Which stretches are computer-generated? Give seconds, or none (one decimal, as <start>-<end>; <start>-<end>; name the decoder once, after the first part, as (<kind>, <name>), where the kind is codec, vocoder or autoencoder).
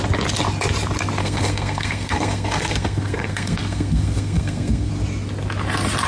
1.2-4.9 (codec, SNAC)